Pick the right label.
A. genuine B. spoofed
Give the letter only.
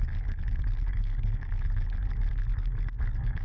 B